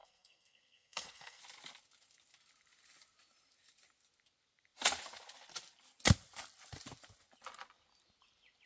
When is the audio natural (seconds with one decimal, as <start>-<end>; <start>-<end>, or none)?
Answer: 1.4-8.7